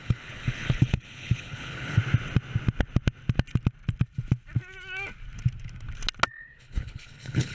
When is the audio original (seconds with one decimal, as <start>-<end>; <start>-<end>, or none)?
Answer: 2.0-6.3